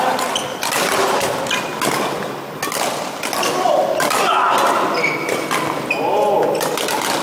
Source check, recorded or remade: recorded